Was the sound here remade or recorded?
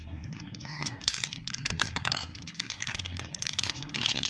remade